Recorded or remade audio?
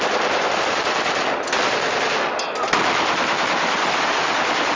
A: recorded